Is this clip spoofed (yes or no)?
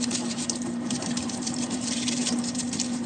yes